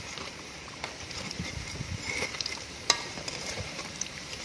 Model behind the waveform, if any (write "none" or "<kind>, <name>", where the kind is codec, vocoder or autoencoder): vocoder, BigVGAN v2